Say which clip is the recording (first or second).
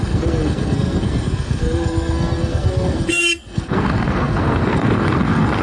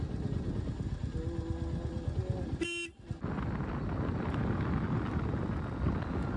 second